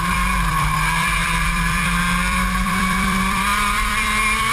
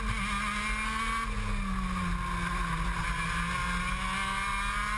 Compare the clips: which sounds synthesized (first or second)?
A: first